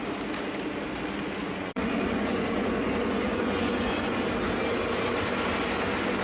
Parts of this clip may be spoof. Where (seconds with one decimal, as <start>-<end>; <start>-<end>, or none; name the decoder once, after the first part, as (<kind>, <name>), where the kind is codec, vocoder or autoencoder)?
1.4-4.2 (vocoder, Vocos)